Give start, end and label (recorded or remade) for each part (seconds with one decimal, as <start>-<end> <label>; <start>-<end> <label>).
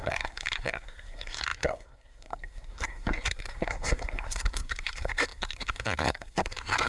0.0-6.9 remade